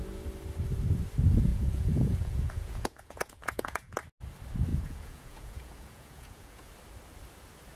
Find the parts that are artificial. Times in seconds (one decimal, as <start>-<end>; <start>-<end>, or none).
1.5-4.0; 4.7-6.7